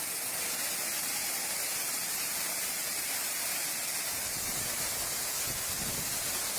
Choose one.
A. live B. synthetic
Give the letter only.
A